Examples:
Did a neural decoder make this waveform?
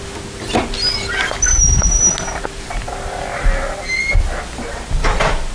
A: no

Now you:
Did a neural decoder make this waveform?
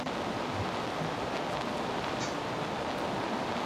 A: no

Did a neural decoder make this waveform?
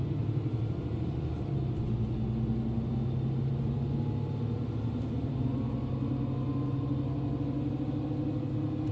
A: no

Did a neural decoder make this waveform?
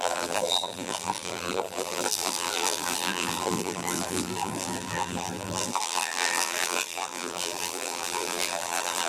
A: yes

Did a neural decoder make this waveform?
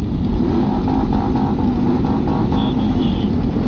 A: yes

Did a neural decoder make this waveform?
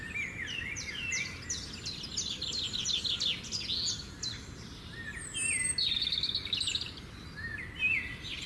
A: no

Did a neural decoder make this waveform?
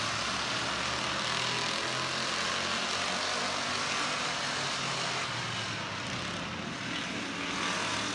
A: no